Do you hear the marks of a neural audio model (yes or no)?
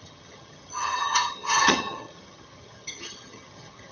yes